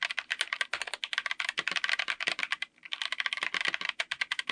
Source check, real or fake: real